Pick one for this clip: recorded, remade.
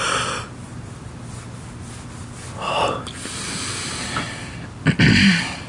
recorded